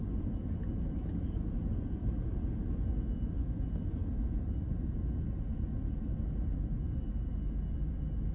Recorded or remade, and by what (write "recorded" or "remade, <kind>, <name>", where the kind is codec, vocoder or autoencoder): recorded